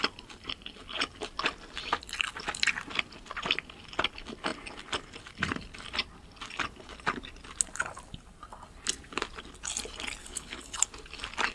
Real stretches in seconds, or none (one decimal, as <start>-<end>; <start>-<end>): 0.0-10.2; 10.8-11.5